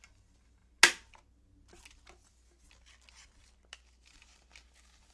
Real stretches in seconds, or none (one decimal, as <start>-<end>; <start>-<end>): 0.0-5.1